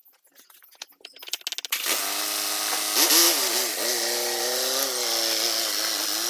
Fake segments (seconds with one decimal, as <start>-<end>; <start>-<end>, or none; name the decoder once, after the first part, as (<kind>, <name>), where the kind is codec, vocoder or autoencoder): 0.0-1.4 (vocoder, Vocos)